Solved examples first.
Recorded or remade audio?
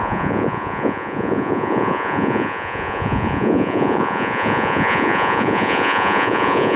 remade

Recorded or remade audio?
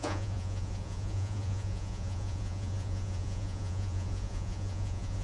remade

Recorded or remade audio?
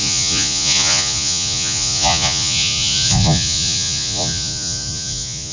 remade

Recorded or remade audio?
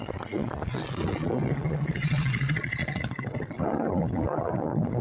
remade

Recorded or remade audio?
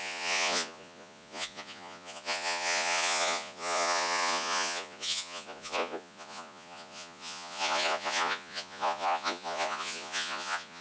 remade